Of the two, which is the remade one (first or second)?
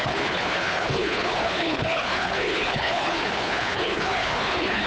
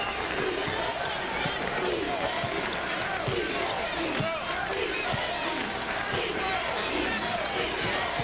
first